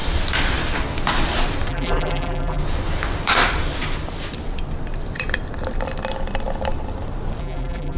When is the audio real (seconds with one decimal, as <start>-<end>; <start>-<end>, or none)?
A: 0.0-1.7; 2.6-7.4